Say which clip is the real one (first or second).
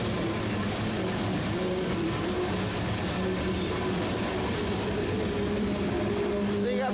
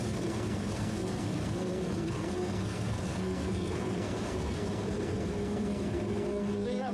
first